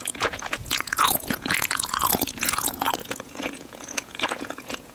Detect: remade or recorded remade